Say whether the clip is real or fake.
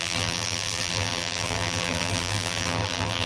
fake